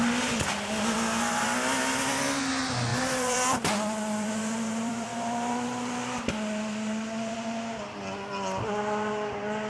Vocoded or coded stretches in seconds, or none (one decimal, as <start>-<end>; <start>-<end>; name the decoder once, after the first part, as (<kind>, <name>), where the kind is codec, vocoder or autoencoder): 2.9-7.3 (vocoder, BigVGAN v2)